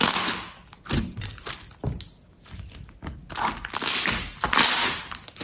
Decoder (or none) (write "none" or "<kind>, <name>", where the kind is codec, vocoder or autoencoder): none